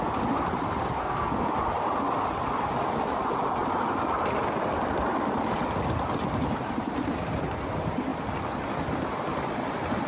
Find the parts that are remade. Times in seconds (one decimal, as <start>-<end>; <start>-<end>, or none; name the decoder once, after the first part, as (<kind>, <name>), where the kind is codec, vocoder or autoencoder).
1.0-1.5 (codec, SNAC)